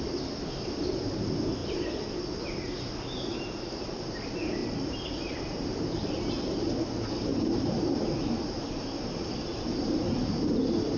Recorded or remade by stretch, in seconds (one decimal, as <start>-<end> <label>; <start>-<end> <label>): 0.0-4.6 recorded; 4.6-6.3 remade; 6.3-7.3 recorded; 7.3-8.0 remade; 8.0-9.5 recorded; 9.5-10.5 remade; 10.5-11.0 recorded